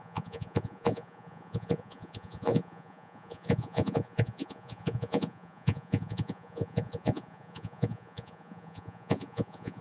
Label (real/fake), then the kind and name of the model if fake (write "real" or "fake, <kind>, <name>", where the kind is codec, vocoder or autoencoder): fake, vocoder, Vocos